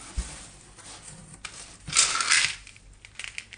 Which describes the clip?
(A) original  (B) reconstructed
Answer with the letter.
A